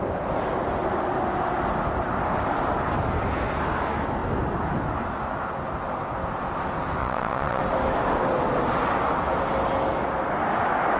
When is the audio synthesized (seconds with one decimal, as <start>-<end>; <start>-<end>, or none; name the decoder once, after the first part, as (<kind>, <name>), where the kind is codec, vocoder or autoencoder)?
7.0-7.6 (vocoder, WaveNeXt)